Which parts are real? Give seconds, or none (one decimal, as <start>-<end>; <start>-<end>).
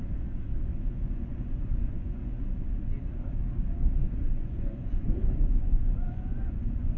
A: 0.0-0.7; 2.5-4.0